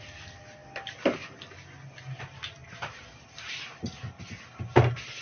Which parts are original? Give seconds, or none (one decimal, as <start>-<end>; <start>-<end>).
0.0-2.6; 3.5-5.2